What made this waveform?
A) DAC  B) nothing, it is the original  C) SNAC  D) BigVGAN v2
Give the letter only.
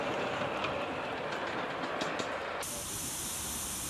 D